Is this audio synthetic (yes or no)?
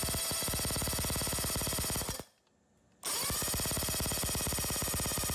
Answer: no